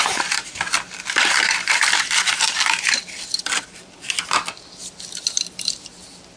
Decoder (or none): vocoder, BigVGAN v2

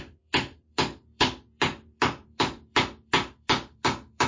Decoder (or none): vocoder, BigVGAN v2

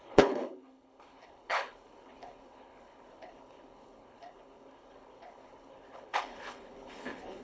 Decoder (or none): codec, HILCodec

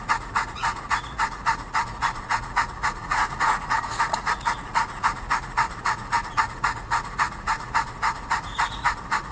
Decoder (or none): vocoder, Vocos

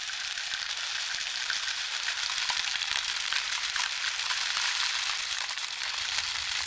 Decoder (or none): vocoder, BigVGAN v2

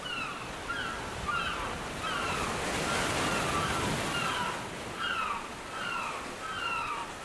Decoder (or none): none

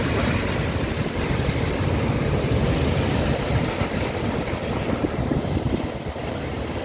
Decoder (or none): none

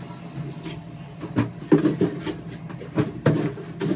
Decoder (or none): none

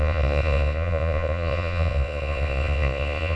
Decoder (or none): vocoder, Vocos